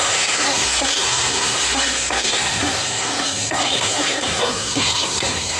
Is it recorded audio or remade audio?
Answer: remade